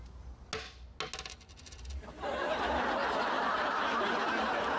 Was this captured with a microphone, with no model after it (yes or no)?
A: yes